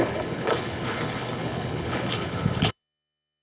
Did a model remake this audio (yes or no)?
yes